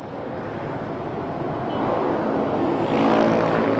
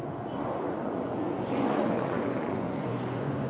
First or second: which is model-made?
second